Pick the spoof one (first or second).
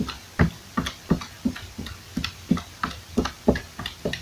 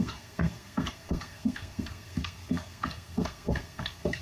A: second